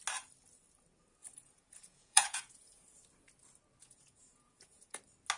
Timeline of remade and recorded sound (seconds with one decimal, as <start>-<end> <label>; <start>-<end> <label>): 0.0-1.2 recorded; 1.2-3.0 remade; 3.0-3.8 recorded; 3.8-5.0 remade; 5.0-5.4 recorded